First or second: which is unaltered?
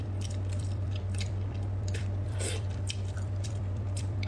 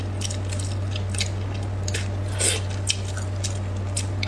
second